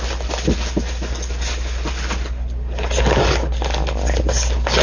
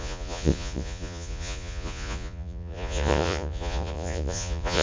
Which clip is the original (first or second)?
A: first